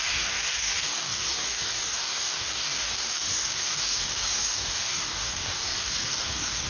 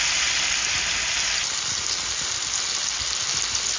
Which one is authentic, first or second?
second